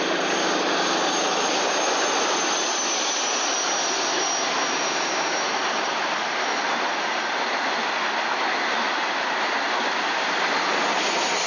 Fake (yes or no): no